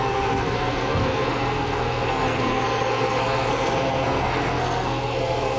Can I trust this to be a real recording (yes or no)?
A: no